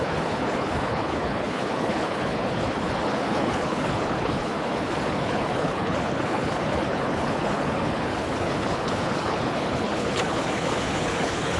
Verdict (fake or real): fake